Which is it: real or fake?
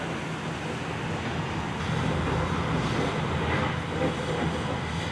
real